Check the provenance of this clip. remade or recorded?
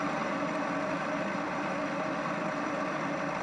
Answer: remade